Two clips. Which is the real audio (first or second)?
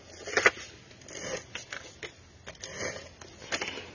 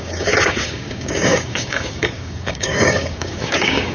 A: first